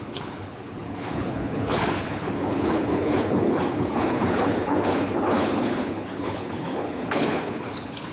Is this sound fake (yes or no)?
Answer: yes